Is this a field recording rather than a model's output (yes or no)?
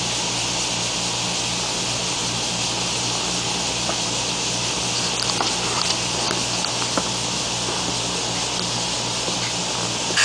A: yes